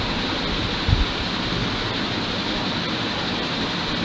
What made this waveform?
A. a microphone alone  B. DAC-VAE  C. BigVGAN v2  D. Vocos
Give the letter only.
A